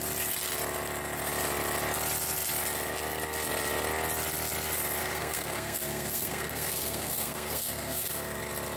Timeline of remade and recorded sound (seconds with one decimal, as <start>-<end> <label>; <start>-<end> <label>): 0.0-5.0 recorded; 5.0-8.4 remade; 8.4-8.8 recorded